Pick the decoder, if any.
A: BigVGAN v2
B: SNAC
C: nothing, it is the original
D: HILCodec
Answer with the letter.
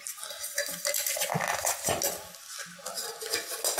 C